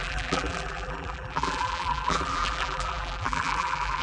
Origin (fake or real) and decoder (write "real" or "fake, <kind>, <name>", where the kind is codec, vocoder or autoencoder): fake, vocoder, BigVGAN v2